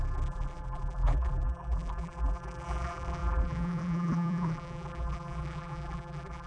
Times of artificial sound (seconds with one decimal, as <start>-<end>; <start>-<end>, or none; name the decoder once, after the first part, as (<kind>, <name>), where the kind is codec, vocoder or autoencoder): 0.0-6.5 (vocoder, BigVGAN v2)